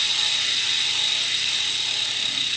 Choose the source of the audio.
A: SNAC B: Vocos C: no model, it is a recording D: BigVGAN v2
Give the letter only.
D